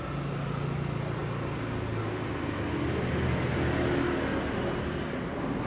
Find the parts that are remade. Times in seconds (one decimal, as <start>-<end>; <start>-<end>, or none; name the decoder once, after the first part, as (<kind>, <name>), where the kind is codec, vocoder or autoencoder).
none